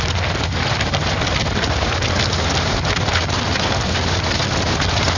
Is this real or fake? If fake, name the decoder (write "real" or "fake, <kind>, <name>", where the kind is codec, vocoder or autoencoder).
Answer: real